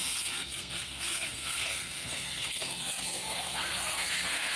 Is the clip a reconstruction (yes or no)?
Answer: yes